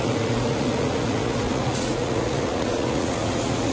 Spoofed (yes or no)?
yes